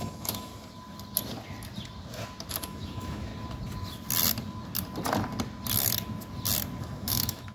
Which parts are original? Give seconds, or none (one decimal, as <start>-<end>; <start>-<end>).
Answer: 0.5-2.5; 3.3-6.8